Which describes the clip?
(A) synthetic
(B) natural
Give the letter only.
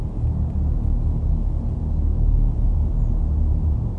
B